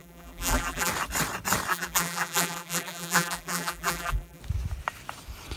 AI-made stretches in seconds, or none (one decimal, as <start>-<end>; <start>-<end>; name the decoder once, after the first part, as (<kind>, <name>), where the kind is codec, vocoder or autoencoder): 0.0-0.9 (vocoder, BigVGAN v2); 1.7-4.4